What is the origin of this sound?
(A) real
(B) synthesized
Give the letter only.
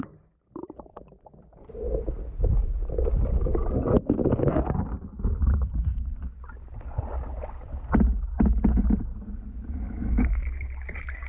A